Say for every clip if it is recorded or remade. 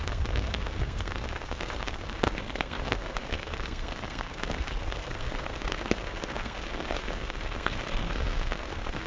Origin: remade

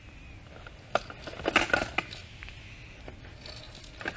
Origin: recorded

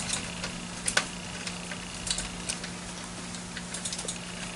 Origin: recorded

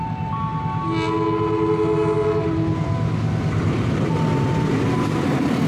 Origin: recorded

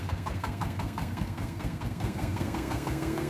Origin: remade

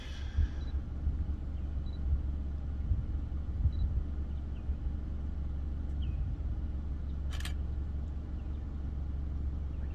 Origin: recorded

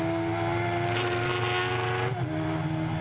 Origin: recorded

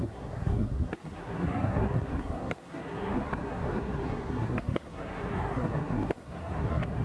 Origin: remade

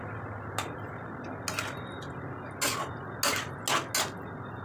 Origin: recorded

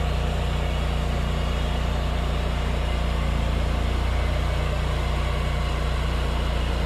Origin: recorded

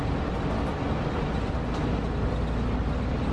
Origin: recorded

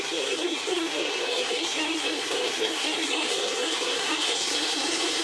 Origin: remade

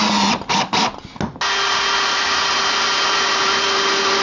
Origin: recorded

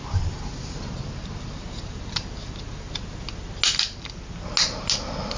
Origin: recorded